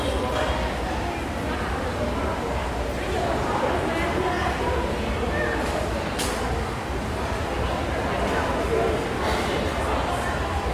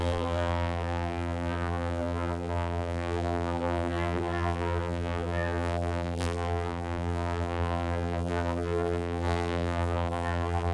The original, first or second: first